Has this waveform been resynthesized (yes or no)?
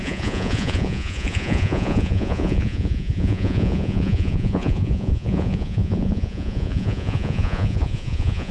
yes